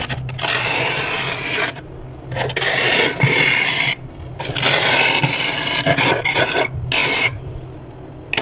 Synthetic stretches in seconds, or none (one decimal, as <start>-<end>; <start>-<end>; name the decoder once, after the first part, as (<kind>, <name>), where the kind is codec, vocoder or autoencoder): none